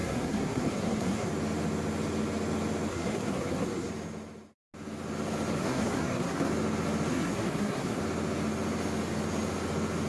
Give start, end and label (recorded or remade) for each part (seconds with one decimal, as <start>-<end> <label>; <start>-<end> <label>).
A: 0.0-1.3 remade; 1.3-2.9 recorded; 2.9-3.9 remade; 3.9-5.6 recorded; 5.6-6.5 remade; 6.5-7.1 recorded; 7.1-8.0 remade; 8.0-10.1 recorded